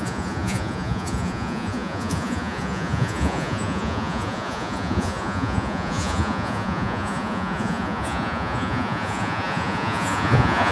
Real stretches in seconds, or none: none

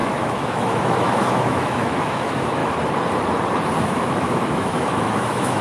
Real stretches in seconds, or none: 2.6-3.8